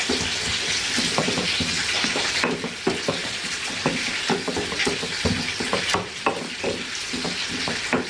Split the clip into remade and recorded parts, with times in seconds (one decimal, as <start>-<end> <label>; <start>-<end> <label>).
0.0-3.2 recorded; 3.2-3.7 remade; 3.7-8.1 recorded